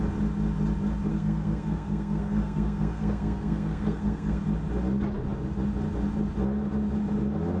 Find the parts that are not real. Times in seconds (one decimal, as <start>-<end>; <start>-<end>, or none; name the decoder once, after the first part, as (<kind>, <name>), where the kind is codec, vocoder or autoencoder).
1.1-4.4 (codec, SNAC)